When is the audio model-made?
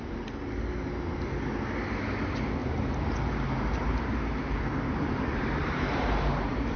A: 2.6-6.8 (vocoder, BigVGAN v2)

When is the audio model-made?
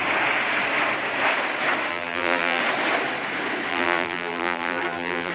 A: 1.9-2.6 (vocoder, BigVGAN v2); 3.7-5.3